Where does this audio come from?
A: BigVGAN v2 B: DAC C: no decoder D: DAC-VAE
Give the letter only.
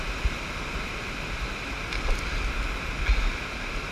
C